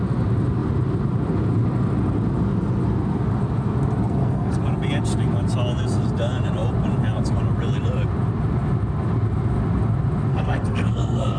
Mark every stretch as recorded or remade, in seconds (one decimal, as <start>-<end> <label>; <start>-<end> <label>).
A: 0.0-4.0 recorded; 4.0-4.6 remade; 4.6-10.3 recorded; 10.3-11.4 remade

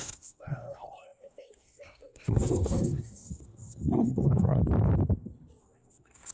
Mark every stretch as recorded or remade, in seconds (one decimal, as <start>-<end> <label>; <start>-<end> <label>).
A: 0.0-4.6 remade; 4.6-5.6 recorded; 5.6-6.3 remade

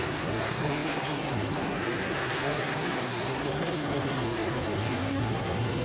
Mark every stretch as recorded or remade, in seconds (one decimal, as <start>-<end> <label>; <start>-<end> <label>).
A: 0.0-5.8 remade

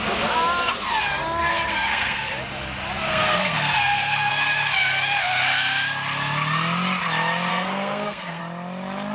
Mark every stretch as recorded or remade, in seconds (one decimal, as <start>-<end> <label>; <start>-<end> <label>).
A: 0.0-1.4 recorded; 1.4-2.3 remade; 2.3-3.1 recorded; 3.1-4.3 remade; 4.3-7.5 recorded; 7.5-8.4 remade; 8.4-9.1 recorded

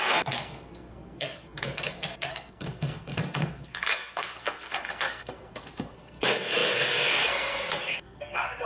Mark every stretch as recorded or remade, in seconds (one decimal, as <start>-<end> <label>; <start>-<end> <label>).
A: 0.0-8.7 remade